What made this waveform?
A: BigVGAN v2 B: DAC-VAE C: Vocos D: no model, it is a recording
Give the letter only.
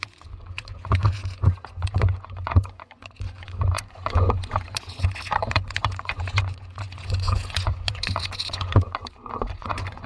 C